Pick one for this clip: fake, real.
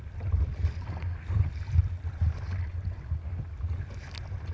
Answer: real